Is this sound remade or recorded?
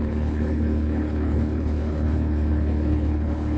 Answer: remade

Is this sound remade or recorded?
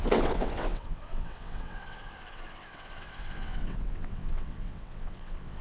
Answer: remade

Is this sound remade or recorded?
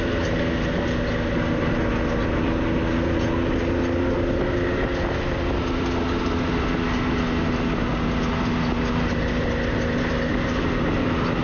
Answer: recorded